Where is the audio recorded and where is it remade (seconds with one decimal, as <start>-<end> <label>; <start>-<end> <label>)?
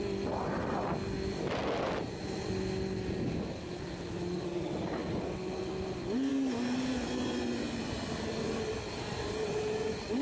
0.0-10.2 recorded